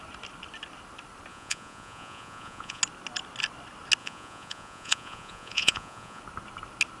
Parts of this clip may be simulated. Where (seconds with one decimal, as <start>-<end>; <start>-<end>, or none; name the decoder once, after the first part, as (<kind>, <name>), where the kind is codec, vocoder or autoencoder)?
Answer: 1.3-2.8 (vocoder, Vocos); 4.0-6.2